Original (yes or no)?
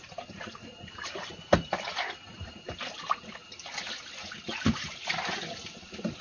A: yes